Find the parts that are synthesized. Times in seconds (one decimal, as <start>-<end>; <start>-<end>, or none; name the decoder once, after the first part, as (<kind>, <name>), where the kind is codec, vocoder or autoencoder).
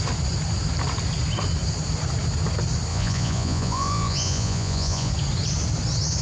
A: 2.9-5.1 (vocoder, Vocos)